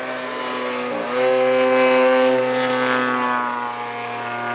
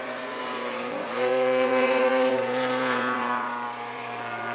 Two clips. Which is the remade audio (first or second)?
second